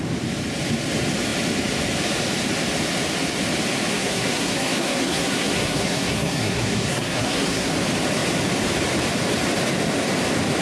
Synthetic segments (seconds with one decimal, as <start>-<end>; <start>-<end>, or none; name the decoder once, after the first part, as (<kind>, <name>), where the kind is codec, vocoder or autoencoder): 3.9-7.7 (codec, SNAC)